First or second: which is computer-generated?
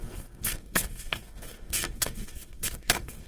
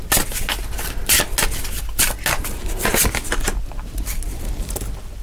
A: first